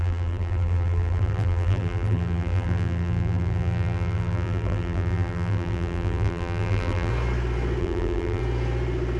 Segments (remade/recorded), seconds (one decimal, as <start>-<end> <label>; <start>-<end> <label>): 0.0-7.1 remade; 7.1-7.8 recorded; 7.8-8.4 remade; 8.4-9.2 recorded